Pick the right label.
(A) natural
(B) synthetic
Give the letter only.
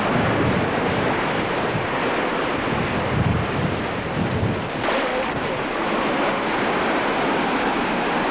A